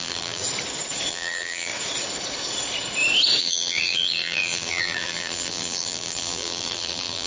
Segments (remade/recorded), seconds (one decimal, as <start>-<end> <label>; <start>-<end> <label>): 0.0-0.4 remade; 0.4-1.1 recorded; 1.1-1.7 remade; 1.7-3.4 recorded; 3.4-7.3 remade